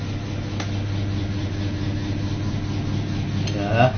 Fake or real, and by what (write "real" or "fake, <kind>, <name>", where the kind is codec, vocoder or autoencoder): real